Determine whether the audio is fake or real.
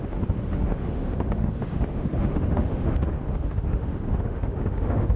fake